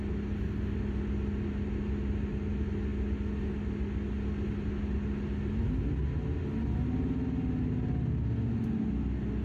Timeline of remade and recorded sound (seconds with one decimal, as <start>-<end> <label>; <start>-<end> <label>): 0.0-9.4 recorded